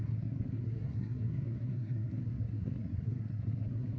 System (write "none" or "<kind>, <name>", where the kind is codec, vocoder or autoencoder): codec, SNAC